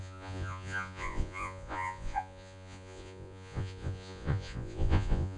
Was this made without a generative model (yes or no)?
no